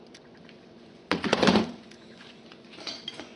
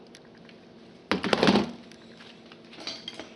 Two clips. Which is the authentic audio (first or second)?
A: second